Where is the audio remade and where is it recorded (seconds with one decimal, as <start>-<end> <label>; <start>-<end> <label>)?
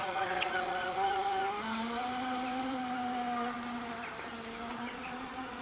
0.0-1.4 remade; 1.4-4.7 recorded; 4.7-5.6 remade